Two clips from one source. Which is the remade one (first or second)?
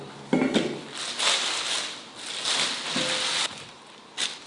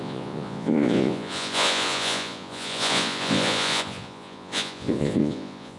second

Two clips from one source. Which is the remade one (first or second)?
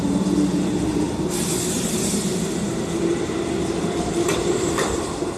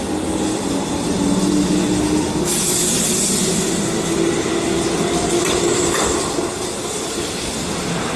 first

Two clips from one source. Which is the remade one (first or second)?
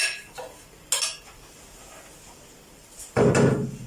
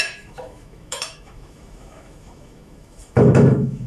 second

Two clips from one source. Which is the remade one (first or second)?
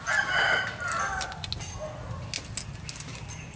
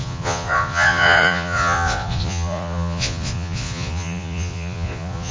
second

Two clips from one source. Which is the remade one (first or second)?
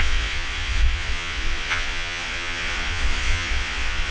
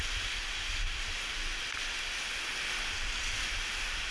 first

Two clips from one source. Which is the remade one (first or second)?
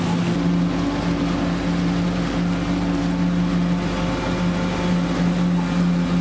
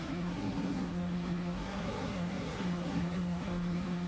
second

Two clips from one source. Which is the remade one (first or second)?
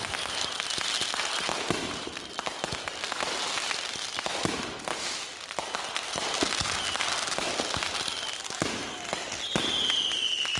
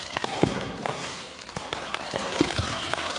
second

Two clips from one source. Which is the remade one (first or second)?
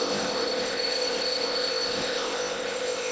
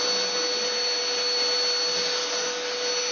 first